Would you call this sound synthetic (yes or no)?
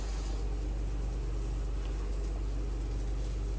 no